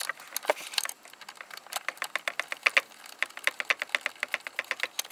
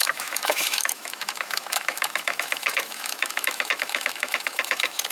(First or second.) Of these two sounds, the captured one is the first